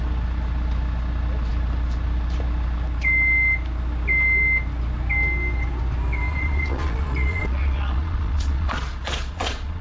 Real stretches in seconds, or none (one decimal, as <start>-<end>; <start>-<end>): 0.0-6.3